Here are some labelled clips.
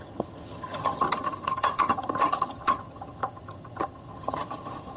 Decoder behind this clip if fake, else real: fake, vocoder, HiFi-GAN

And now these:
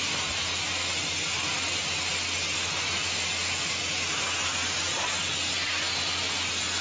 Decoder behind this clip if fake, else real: real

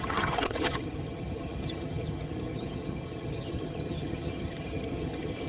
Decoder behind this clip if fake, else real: fake, vocoder, HiFi-GAN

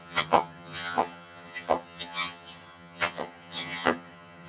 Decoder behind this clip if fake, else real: fake, vocoder, HiFi-GAN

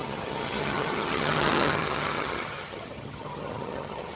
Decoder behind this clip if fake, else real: fake, vocoder, HiFi-GAN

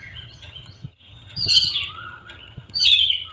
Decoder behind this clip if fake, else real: fake, vocoder, HiFi-GAN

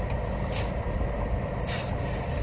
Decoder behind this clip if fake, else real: real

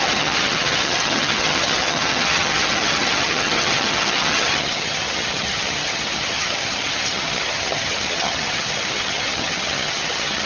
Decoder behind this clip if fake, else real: fake, vocoder, HiFi-GAN